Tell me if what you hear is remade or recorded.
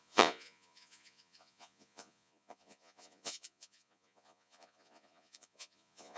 remade